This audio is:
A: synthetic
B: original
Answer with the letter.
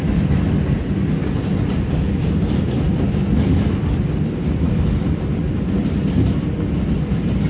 B